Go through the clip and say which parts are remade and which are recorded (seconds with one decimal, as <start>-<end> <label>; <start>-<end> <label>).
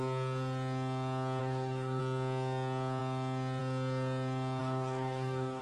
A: 0.0-1.4 recorded; 1.4-2.0 remade; 2.0-4.6 recorded; 4.6-5.6 remade